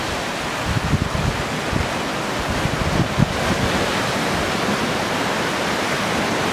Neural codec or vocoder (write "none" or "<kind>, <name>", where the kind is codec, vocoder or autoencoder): none